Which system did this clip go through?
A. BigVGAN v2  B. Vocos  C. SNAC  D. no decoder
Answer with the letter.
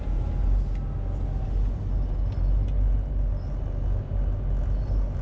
D